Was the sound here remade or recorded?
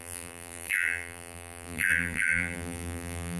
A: remade